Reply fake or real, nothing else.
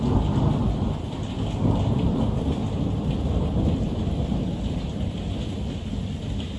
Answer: real